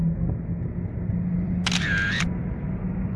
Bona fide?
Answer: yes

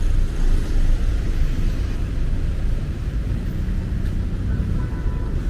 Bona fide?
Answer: yes